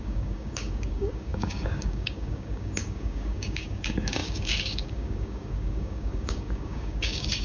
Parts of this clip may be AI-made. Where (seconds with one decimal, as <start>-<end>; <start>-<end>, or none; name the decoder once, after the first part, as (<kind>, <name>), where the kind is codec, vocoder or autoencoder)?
0.0-7.4 (codec, DAC)